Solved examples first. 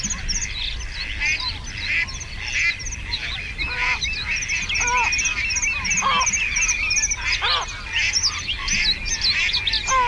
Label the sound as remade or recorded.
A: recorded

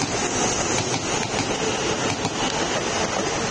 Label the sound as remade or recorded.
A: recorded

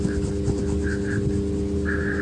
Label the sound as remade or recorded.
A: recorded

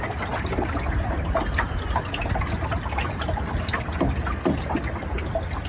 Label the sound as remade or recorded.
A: recorded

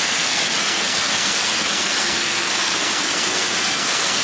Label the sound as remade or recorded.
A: remade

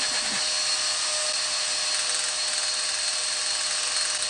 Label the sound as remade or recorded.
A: recorded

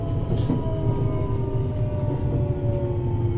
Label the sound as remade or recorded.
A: recorded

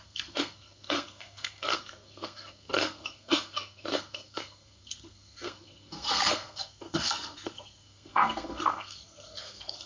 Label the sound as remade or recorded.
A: remade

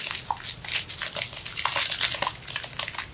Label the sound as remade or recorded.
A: recorded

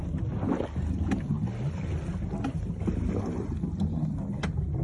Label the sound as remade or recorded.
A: recorded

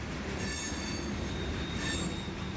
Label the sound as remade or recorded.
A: recorded